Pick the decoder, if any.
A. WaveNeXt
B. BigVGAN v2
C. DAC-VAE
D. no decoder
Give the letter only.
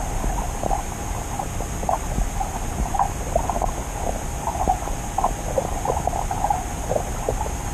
D